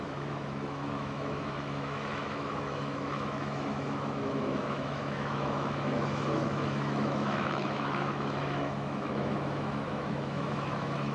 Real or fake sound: fake